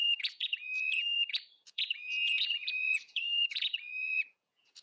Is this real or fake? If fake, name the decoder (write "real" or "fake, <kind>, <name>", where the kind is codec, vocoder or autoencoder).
fake, vocoder, Vocos